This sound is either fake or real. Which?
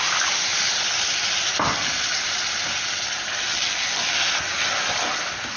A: real